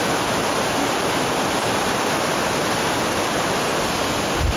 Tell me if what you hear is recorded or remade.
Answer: recorded